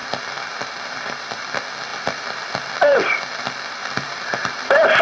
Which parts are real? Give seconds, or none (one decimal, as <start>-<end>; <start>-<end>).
1.1-1.9; 3.0-3.8

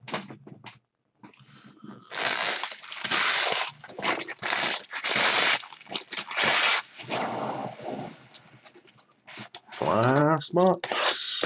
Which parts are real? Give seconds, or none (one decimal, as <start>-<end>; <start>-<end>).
0.0-1.9; 2.5-11.5

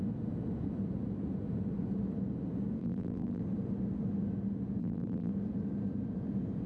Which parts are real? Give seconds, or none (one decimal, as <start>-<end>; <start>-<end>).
0.0-2.8; 3.4-4.8; 5.3-6.7